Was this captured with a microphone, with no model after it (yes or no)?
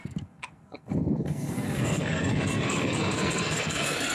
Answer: no